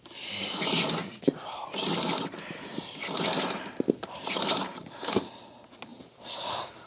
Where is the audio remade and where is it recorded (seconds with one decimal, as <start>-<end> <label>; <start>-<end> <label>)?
0.0-4.0 recorded; 4.0-5.3 remade; 5.3-5.9 recorded; 5.9-6.9 remade